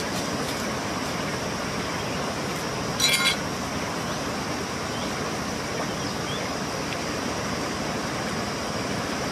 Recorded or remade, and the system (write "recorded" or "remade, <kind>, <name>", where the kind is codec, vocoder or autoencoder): recorded